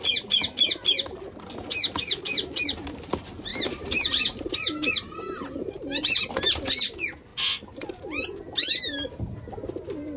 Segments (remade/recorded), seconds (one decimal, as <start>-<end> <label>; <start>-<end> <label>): 0.0-3.5 recorded; 3.5-6.7 remade; 6.7-10.2 recorded